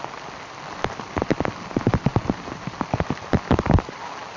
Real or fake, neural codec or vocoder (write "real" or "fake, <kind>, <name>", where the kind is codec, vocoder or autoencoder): real